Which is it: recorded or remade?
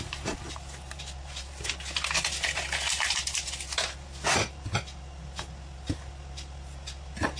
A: recorded